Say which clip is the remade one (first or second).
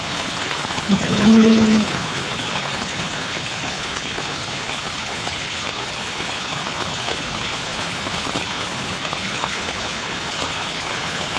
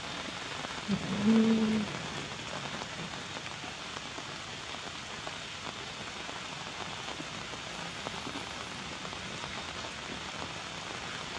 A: first